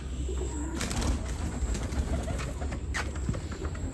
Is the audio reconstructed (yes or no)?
no